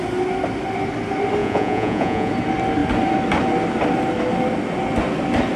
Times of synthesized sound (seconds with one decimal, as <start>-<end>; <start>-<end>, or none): 1.4-2.3